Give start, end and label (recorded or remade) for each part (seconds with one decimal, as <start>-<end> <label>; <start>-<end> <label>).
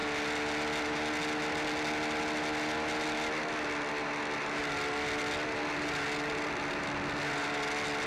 0.0-8.1 recorded